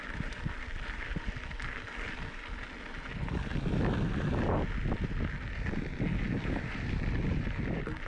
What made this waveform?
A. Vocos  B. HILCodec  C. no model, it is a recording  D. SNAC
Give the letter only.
C